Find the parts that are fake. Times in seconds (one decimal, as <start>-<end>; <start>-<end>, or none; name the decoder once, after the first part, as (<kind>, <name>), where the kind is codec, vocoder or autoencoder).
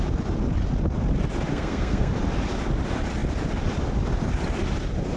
1.5-2.1 (codec, SNAC)